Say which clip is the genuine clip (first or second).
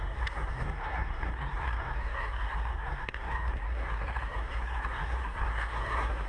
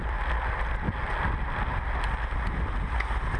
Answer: second